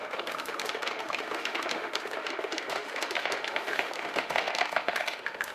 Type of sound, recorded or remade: remade